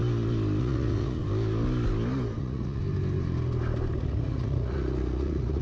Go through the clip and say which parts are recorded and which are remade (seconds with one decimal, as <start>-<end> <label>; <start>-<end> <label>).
0.0-0.6 recorded; 0.6-1.2 remade; 1.2-2.4 recorded; 2.4-2.8 remade; 2.8-4.0 recorded; 4.0-5.6 remade